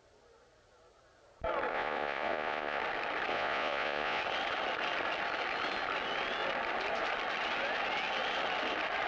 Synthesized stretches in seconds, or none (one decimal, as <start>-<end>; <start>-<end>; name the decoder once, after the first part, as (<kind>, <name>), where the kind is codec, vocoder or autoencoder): 1.7-2.8 (vocoder, Vocos); 3.3-4.2